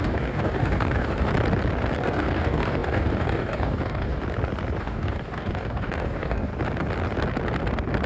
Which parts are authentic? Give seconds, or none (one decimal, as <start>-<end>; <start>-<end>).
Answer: 1.3-2.0; 4.2-4.8; 6.5-8.1